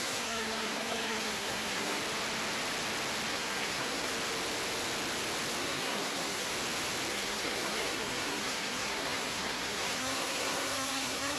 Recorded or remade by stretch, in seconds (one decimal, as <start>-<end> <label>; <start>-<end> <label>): 0.0-2.0 remade; 2.0-3.3 recorded; 3.3-4.1 remade; 4.1-5.6 recorded; 5.6-6.5 remade; 6.5-7.1 recorded; 7.1-11.4 remade